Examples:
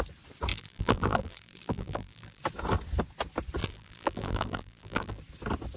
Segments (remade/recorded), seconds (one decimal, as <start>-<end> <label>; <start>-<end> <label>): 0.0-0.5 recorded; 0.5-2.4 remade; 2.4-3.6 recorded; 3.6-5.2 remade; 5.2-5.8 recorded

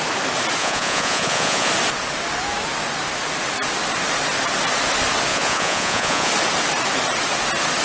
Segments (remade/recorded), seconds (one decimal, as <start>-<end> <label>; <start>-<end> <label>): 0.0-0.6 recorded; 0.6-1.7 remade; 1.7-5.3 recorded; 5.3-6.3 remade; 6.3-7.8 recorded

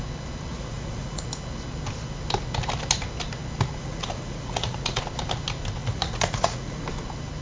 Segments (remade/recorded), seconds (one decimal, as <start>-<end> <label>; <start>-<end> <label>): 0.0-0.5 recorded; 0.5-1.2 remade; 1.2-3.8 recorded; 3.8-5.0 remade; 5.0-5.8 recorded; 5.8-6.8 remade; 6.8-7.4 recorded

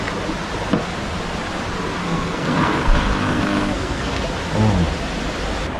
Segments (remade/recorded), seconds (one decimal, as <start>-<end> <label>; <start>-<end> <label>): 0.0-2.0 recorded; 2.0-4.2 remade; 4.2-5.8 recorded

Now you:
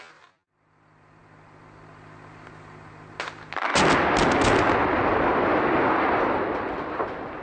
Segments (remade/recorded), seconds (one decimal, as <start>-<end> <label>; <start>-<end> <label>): 0.0-7.4 recorded

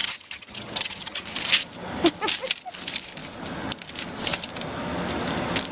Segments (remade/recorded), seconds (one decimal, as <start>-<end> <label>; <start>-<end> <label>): 0.0-1.2 remade; 1.2-5.7 recorded

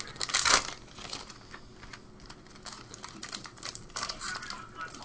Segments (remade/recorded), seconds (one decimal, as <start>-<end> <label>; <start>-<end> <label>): 0.0-3.4 recorded; 3.4-4.3 remade; 4.3-5.0 recorded